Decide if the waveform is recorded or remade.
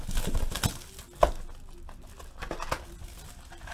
recorded